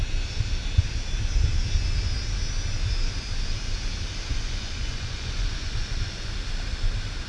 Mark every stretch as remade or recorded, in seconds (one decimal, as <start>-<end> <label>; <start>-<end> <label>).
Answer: 0.0-4.3 recorded; 4.3-6.3 remade; 6.3-7.3 recorded